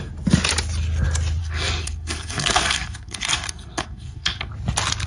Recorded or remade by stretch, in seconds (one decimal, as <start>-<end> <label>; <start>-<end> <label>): 0.0-1.4 recorded; 1.4-4.5 remade; 4.5-5.1 recorded